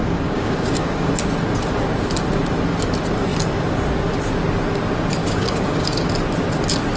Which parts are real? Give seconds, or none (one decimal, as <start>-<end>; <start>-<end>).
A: 1.1-5.2; 6.1-7.0

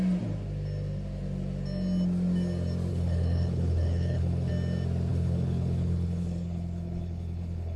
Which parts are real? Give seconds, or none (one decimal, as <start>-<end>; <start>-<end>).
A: 0.0-2.9; 4.5-5.1